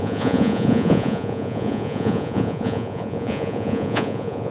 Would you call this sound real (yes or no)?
no